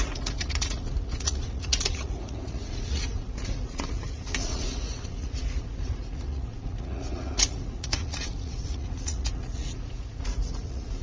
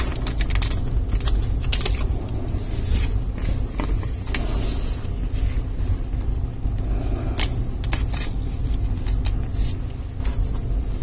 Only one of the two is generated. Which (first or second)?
first